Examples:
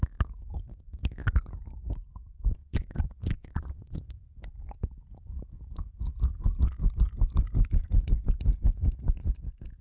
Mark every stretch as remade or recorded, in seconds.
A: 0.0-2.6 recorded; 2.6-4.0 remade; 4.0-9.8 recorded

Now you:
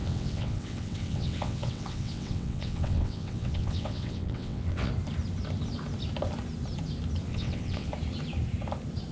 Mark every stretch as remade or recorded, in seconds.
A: 0.0-4.9 remade; 4.9-7.3 recorded; 7.3-7.9 remade; 7.9-9.1 recorded

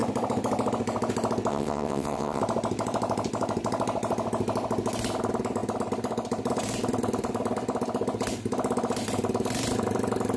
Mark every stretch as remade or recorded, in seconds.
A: 0.0-1.5 recorded; 1.5-2.4 remade; 2.4-10.4 recorded

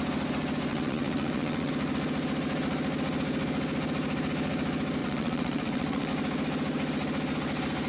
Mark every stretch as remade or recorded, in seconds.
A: 0.0-0.7 recorded; 0.7-1.7 remade; 1.7-5.0 recorded; 5.0-6.1 remade; 6.1-7.9 recorded